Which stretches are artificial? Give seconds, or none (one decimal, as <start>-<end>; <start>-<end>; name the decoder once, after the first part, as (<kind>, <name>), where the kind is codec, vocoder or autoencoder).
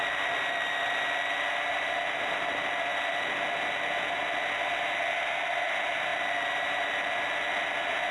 none